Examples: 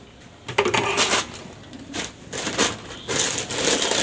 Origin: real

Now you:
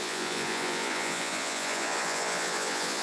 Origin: fake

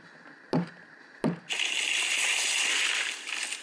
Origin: real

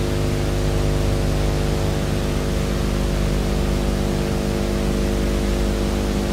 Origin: real